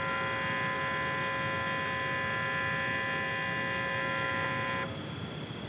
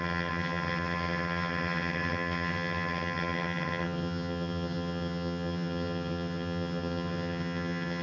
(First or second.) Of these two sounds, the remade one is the second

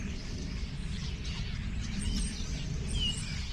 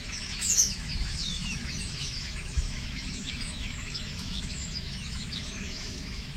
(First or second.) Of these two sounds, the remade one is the second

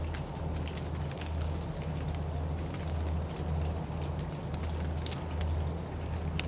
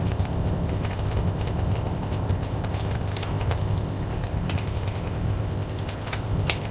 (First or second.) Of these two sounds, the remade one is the second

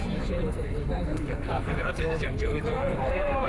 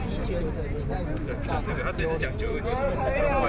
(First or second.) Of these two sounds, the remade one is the first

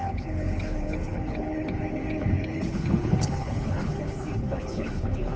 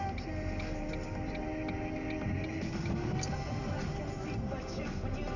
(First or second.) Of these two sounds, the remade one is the first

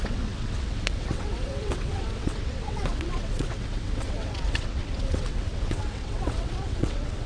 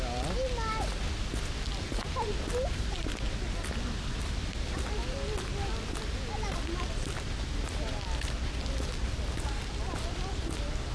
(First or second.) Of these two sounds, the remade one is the first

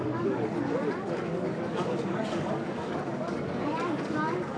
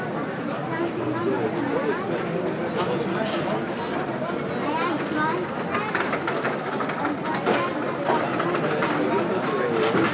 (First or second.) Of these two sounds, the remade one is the first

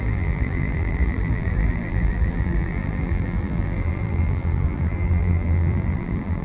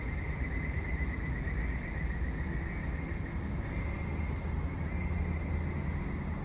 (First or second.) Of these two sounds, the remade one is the first